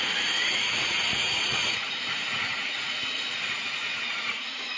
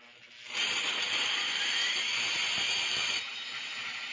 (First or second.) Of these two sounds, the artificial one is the first